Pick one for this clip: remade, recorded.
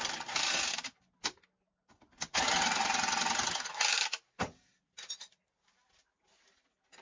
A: recorded